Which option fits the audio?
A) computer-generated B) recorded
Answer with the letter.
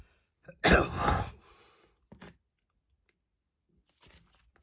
B